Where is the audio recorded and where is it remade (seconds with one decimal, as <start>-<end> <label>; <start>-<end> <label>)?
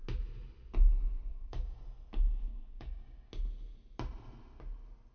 0.0-1.3 recorded; 1.3-1.8 remade; 1.8-2.5 recorded; 2.5-3.3 remade; 3.3-5.1 recorded